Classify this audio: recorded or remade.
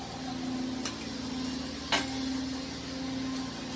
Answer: recorded